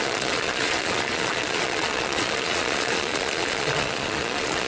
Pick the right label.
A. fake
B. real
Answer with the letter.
A